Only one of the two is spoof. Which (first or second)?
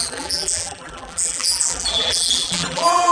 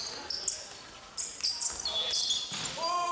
first